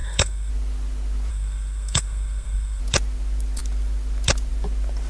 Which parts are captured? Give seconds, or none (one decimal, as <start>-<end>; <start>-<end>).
0.5-1.3; 2.8-5.1